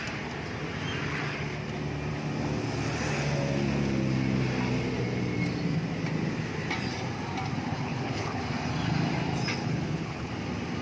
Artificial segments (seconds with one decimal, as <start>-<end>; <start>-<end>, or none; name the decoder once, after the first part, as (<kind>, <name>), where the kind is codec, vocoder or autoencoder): 7.7-8.4 (codec, HILCodec); 9.6-10.3